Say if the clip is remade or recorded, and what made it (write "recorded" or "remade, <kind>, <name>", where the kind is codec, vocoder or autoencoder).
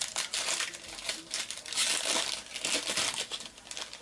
recorded